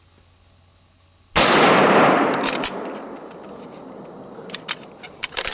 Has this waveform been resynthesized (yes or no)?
no